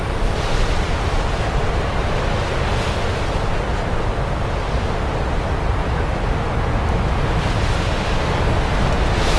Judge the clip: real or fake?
real